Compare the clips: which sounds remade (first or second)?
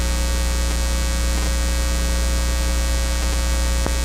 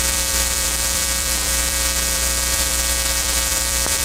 second